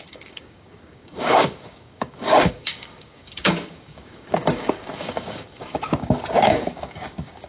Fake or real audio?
fake